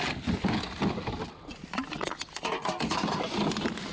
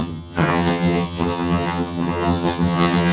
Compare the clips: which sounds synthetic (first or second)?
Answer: second